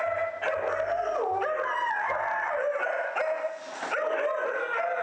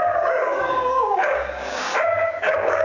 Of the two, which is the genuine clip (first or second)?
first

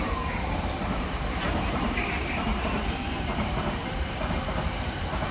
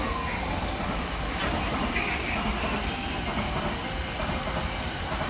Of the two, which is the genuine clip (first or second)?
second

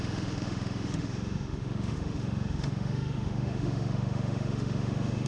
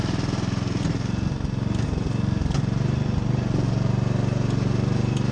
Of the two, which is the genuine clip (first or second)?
second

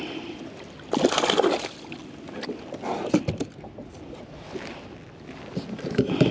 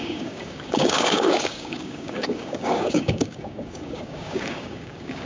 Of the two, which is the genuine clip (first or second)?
first